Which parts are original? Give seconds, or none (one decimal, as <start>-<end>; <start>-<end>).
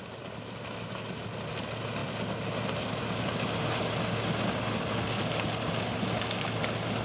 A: 0.0-7.0